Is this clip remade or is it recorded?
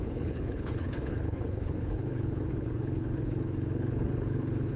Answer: remade